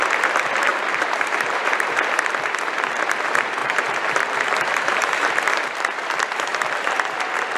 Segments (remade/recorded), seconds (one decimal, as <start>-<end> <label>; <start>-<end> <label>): 0.0-0.7 recorded; 0.7-1.9 remade; 1.9-3.6 recorded; 3.6-5.3 remade; 5.3-7.6 recorded